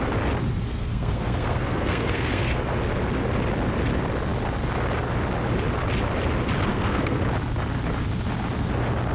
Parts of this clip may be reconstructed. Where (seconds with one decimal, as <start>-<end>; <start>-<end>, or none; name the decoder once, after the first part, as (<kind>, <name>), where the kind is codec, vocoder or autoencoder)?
0.7-2.6 (codec, SNAC); 6.7-7.2